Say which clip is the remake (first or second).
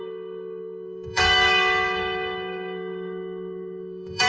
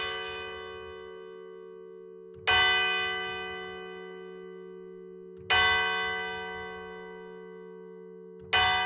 first